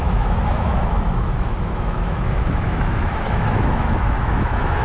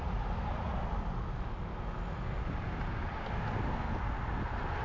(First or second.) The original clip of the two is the second